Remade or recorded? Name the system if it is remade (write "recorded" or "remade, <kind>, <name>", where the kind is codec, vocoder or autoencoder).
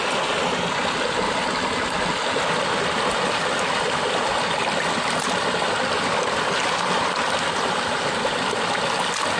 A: recorded